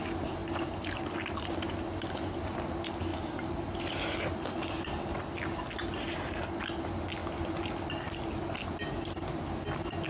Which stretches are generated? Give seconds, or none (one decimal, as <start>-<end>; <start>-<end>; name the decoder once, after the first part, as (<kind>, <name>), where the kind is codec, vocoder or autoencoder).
3.1-3.8 (vocoder, BigVGAN v2)